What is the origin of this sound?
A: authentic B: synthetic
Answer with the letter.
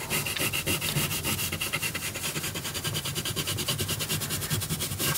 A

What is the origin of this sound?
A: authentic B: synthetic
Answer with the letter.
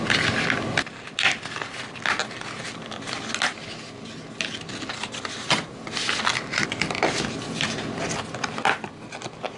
A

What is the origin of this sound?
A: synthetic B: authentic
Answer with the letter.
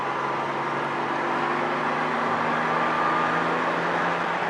B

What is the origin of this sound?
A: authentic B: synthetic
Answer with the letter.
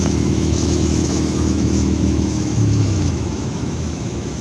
B